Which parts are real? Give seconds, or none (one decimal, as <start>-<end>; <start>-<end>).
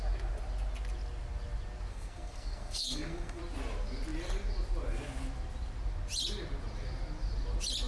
0.0-1.9; 3.4-7.9